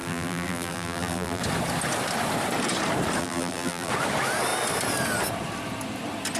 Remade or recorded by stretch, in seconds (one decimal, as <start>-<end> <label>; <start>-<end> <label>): 0.0-1.4 remade; 1.4-3.2 recorded; 3.2-3.9 remade; 3.9-6.4 recorded